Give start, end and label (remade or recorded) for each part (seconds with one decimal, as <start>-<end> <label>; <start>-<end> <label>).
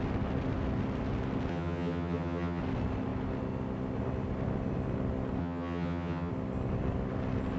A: 0.0-1.5 recorded; 1.5-2.6 remade; 2.6-5.4 recorded; 5.4-6.3 remade; 6.3-7.6 recorded